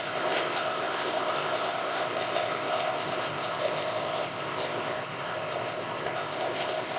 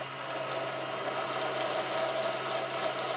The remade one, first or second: first